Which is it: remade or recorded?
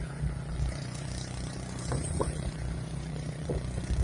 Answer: remade